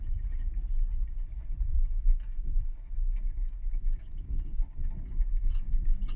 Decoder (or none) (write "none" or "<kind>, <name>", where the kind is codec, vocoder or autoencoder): none